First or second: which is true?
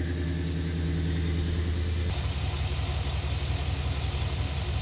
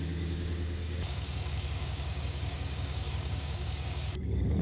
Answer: first